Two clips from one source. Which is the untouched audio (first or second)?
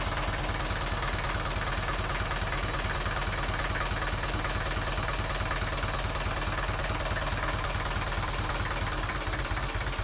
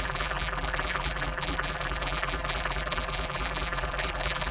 first